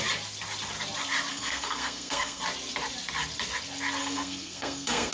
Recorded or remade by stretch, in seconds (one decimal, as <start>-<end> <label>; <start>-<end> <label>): 0.0-1.3 recorded; 1.3-2.4 remade; 2.4-4.0 recorded; 4.0-5.1 remade